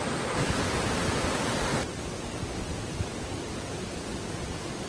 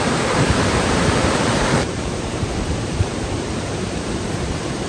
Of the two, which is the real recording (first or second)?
first